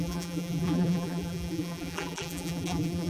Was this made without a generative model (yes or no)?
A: no